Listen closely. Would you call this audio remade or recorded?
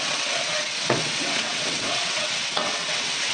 remade